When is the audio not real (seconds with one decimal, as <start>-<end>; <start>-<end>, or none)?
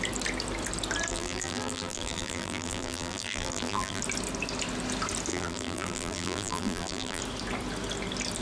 1.1-4.0; 5.3-7.2